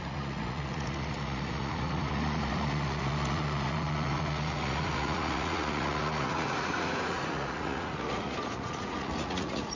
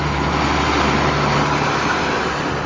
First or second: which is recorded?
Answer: second